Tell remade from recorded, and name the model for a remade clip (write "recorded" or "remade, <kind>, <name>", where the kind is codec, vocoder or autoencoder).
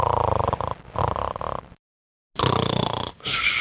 recorded